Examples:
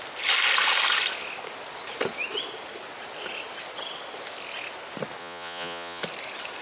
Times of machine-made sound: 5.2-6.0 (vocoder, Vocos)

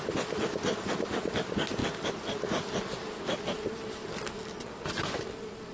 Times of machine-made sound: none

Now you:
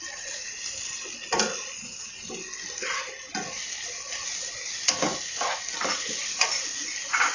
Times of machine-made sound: 1.6-2.2 (vocoder, Vocos)